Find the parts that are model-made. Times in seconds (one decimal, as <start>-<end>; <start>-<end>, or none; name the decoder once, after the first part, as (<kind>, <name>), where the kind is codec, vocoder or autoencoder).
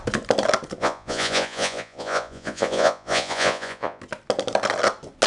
0.8-4.0 (vocoder, Vocos)